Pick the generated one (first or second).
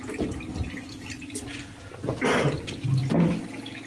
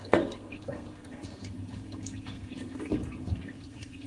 second